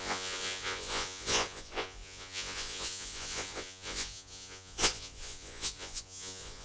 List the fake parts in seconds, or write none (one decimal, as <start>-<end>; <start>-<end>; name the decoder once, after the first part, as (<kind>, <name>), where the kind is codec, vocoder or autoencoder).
0.0-6.6 (vocoder, Vocos)